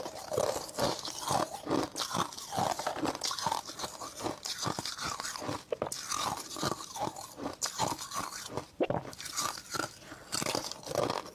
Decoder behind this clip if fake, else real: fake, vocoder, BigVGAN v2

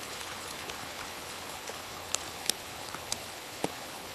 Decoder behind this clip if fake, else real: fake, codec, HILCodec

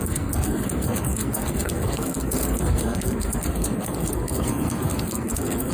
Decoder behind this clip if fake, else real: fake, codec, SNAC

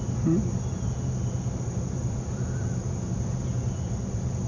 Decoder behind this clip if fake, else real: real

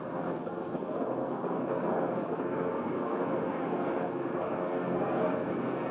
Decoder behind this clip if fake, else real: fake, codec, SNAC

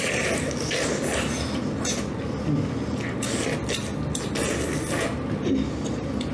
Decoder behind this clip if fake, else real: real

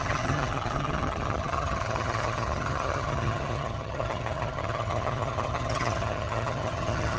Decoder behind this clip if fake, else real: fake, vocoder, HiFi-GAN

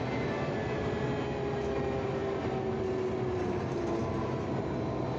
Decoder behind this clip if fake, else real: real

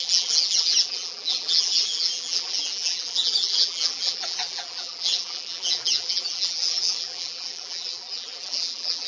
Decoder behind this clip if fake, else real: fake, vocoder, BigVGAN v2